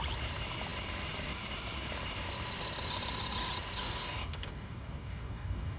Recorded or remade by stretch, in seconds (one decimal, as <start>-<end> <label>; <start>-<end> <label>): 0.0-3.8 recorded; 3.8-5.8 remade